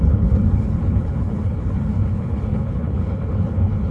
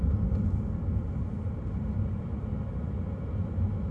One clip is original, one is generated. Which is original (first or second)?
second